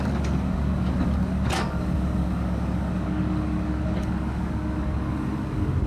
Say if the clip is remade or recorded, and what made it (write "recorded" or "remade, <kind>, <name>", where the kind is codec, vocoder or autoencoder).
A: remade, codec, DAC